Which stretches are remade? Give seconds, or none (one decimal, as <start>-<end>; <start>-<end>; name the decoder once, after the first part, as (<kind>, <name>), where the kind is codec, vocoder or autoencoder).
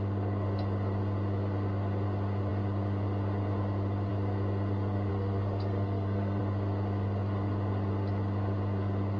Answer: 5.1-6.4 (codec, SNAC)